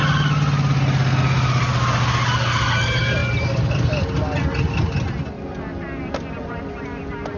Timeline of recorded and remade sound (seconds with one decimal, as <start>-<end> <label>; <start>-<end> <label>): 0.0-7.4 recorded